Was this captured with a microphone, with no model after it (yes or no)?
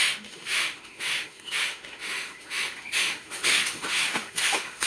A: no